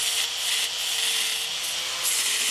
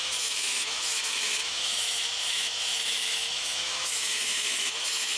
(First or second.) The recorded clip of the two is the first